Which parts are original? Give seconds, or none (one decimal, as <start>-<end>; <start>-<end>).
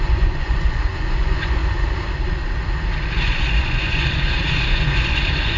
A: 1.6-3.1